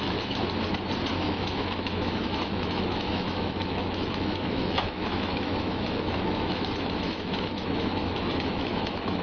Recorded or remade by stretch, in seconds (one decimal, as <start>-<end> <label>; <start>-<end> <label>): 0.0-0.4 remade; 0.4-1.2 recorded; 1.2-9.2 remade